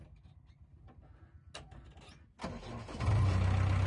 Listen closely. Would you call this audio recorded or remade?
recorded